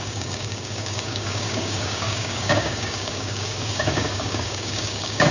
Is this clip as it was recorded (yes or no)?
no